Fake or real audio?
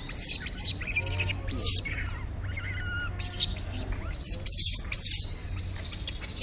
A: real